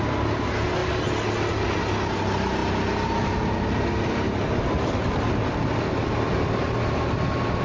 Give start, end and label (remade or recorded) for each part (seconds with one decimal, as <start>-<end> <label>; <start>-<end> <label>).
0.0-7.6 recorded